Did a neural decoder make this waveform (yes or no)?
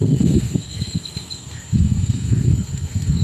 yes